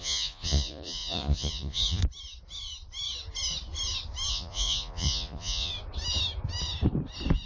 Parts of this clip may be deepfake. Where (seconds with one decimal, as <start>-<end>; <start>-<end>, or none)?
0.0-2.0; 4.3-5.7